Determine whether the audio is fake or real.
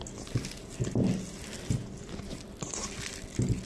real